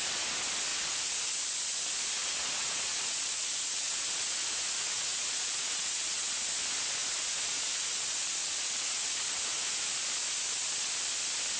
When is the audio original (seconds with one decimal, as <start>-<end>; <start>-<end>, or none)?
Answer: 0.0-0.7; 1.3-2.2; 6.5-7.0; 9.9-11.6